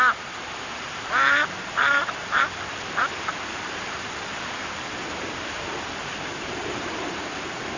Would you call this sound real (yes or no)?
no